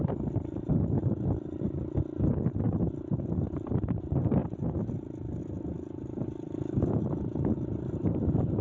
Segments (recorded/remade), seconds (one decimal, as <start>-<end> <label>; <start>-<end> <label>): 0.0-8.6 recorded